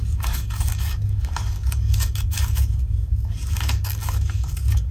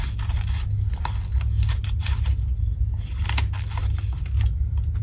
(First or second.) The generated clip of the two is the first